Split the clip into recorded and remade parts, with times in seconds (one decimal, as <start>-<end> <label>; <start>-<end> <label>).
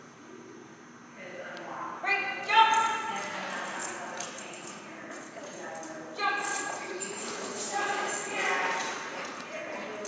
0.0-3.8 recorded; 3.8-5.7 remade; 5.7-6.5 recorded; 6.5-8.1 remade; 8.1-8.8 recorded; 8.8-9.7 remade; 9.7-10.1 recorded